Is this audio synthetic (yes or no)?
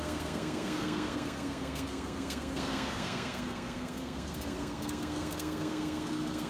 yes